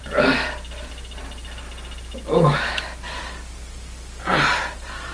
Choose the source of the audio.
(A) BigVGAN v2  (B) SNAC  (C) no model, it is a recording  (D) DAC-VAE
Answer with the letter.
C